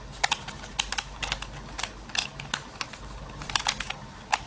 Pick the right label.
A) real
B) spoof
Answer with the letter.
A